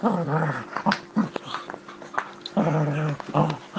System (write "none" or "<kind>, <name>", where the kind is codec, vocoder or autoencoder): none